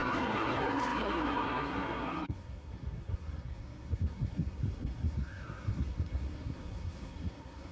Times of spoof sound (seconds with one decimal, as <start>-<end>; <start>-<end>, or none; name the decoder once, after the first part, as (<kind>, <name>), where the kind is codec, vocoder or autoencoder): 0.0-7.7 (codec, SNAC)